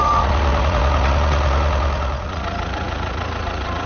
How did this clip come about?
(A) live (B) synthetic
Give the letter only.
B